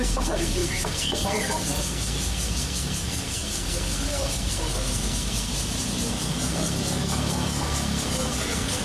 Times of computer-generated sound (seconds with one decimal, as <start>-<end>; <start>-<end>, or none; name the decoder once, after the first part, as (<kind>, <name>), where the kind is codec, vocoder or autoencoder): 0.0-5.5 (codec, SNAC); 6.1-8.8